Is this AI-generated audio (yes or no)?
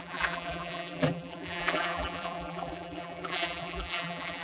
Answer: yes